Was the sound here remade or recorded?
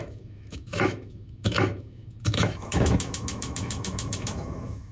remade